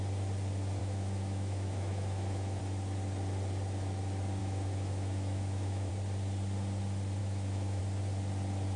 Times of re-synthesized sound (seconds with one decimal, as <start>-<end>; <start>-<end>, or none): 0.8-2.6; 4.4-5.9; 7.2-7.8